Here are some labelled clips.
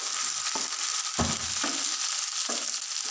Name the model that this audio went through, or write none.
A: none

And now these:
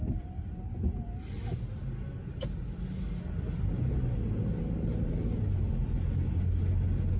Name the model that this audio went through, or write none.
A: none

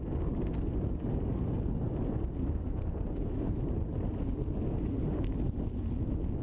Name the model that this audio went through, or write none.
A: none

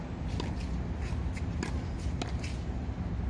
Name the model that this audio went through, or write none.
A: none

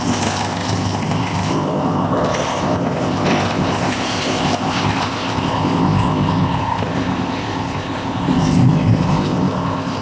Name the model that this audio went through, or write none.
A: codec, ZipCodec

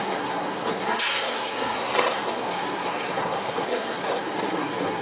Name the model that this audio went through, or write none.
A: codec, SNAC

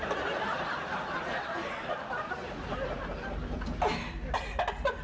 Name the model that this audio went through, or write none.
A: none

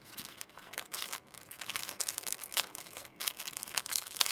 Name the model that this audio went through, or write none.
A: codec, SNAC